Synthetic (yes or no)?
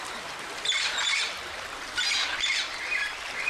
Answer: yes